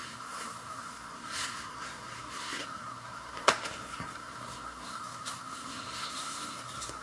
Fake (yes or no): yes